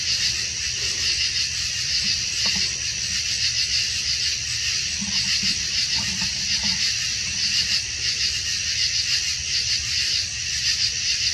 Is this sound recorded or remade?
recorded